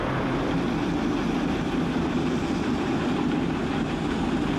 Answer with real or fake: real